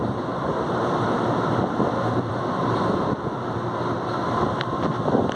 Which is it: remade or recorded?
remade